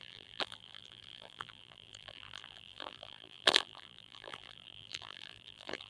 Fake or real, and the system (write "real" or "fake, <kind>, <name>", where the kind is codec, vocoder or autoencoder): fake, vocoder, BigVGAN v2